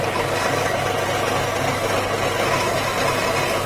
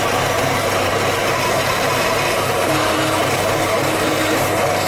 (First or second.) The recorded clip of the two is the first